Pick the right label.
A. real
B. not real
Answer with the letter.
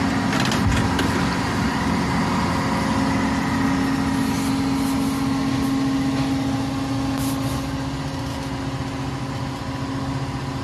A